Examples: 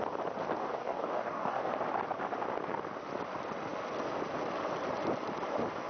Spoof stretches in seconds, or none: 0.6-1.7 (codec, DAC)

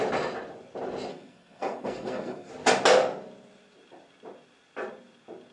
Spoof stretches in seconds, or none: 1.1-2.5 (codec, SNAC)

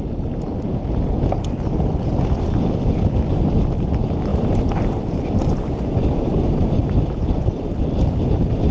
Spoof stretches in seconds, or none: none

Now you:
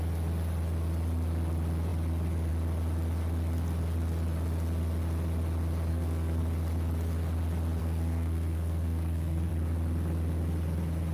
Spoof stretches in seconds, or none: 5.9-6.4 (codec, SNAC); 7.8-9.5